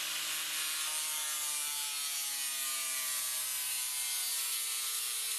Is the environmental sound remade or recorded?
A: recorded